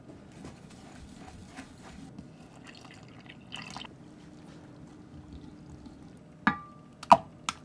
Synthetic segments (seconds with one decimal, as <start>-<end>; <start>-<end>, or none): none